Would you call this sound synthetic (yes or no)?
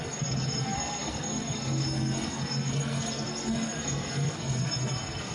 yes